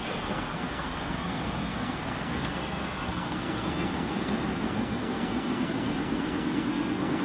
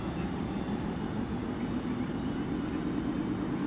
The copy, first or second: first